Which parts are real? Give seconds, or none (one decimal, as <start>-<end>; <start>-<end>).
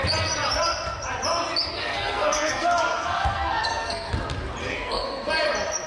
0.0-1.8; 4.1-4.6; 5.3-5.9